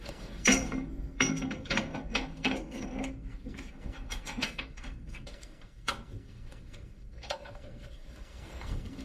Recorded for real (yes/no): no